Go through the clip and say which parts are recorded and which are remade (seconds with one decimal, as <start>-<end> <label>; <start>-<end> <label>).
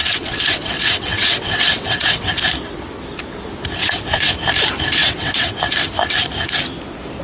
0.0-2.3 remade; 2.3-3.8 recorded; 3.8-4.3 remade; 4.3-5.0 recorded; 5.0-5.6 remade; 5.6-7.2 recorded